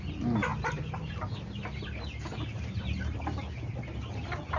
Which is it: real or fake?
real